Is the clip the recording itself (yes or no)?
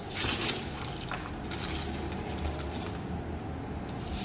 yes